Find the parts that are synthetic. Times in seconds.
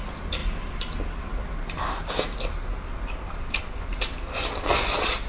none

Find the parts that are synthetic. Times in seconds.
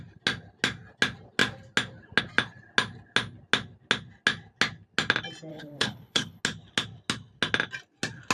5.5-6.4 (codec, HILCodec)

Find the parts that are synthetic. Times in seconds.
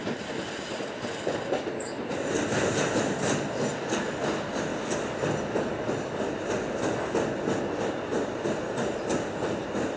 none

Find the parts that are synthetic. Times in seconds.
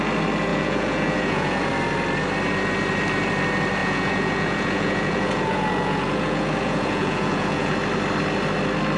0.5-1.7 (vocoder, Vocos); 3.8-7.7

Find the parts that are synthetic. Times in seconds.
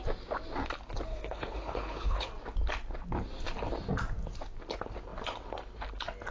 1.1-2.3 (codec, HILCodec)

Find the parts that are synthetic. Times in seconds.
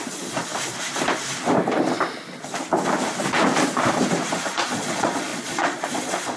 0.0-0.5 (vocoder, Vocos); 4.3-6.4